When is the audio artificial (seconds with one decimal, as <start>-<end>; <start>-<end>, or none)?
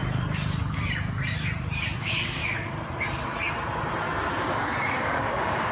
2.0-2.4; 4.4-5.7